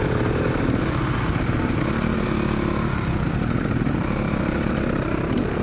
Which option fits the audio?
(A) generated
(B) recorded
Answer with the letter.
B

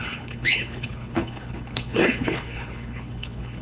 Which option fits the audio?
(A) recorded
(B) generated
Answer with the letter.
B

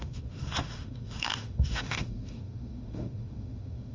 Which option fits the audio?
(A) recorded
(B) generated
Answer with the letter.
B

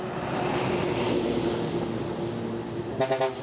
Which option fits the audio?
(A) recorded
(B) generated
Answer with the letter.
A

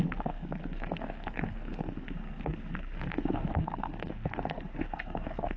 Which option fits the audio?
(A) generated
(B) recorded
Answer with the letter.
A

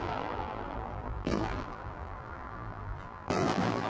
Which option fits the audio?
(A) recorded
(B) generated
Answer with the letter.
B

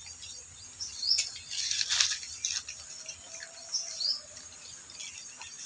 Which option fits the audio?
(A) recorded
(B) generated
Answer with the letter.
A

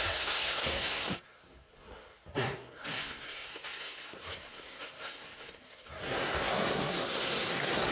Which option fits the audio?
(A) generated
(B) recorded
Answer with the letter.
A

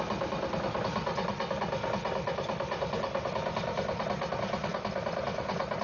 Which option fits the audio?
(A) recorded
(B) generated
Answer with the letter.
A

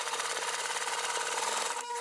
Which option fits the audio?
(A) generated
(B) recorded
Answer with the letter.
A